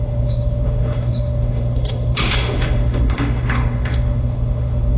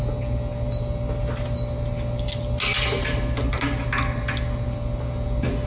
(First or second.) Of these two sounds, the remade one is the first